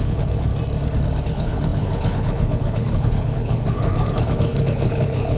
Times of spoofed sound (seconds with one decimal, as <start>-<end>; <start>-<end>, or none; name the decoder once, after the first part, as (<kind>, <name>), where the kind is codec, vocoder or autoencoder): 0.0-0.5 (codec, HILCodec); 1.2-5.4